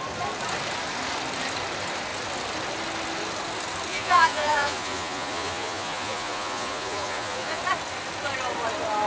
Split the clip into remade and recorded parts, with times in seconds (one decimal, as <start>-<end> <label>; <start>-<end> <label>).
0.0-3.9 recorded; 3.9-7.6 remade; 7.6-9.1 recorded